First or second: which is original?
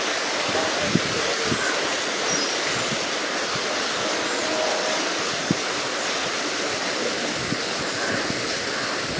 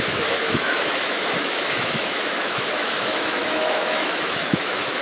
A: first